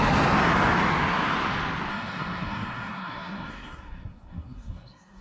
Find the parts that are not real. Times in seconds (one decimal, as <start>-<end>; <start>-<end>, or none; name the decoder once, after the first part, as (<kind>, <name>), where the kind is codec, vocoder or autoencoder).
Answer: 1.9-5.2 (codec, SNAC)